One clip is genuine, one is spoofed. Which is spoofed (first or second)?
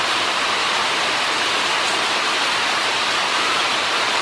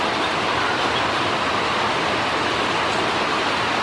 first